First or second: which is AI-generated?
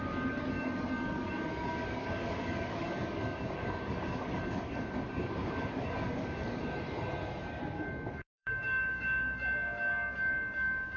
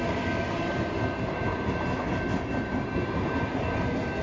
first